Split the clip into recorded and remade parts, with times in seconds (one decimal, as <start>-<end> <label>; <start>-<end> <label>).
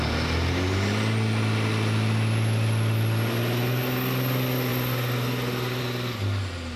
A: 0.0-6.8 recorded